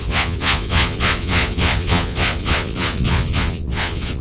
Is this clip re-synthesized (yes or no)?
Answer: yes